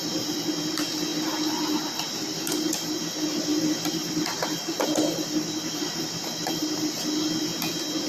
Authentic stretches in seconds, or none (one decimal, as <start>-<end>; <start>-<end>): 0.0-8.1